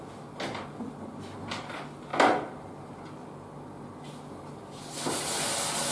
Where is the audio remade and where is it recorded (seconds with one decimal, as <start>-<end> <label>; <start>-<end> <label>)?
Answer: 0.0-5.9 recorded